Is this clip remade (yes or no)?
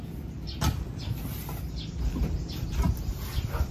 no